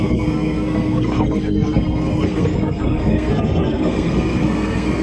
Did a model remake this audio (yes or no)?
yes